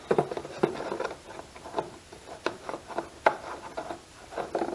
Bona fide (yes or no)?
yes